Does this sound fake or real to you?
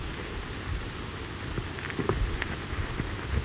real